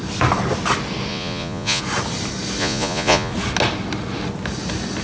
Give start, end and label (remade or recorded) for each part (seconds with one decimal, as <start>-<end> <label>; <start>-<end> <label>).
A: 0.0-1.1 recorded; 1.1-1.8 remade; 1.8-2.6 recorded; 2.6-3.3 remade; 3.3-5.0 recorded